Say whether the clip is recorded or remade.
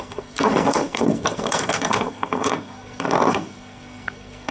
remade